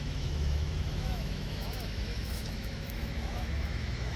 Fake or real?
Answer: fake